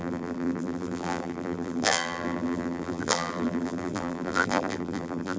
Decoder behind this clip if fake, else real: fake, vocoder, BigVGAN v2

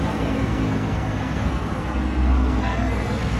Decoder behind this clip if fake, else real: fake, codec, SNAC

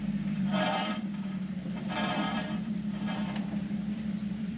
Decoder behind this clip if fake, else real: fake, vocoder, BigVGAN v2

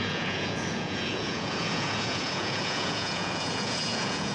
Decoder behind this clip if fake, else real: fake, vocoder, Vocos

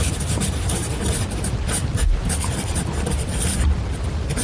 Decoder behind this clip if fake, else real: fake, vocoder, BigVGAN v2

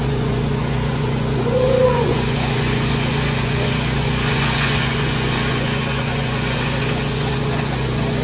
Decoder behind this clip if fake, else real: fake, vocoder, Vocos